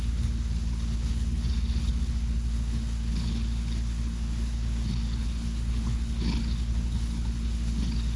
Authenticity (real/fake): fake